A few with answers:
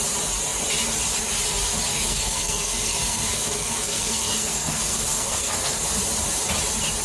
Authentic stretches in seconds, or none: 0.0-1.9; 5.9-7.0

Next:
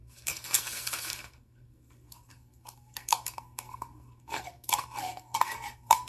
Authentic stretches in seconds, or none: none

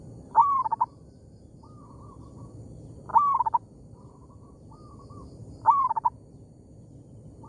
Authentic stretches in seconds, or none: 0.0-7.5

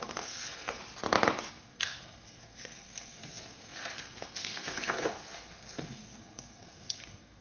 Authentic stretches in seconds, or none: 0.8-1.5

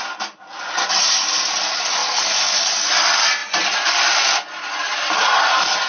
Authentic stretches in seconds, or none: 0.0-5.9

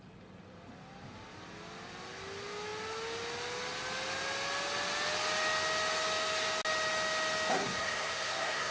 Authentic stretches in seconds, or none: 0.0-7.6

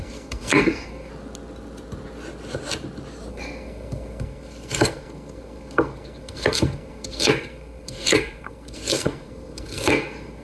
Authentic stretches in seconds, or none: 1.1-3.3

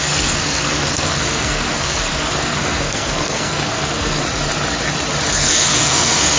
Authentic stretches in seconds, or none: 4.2-5.3